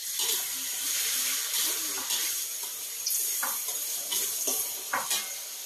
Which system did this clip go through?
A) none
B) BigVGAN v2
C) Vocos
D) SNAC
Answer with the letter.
B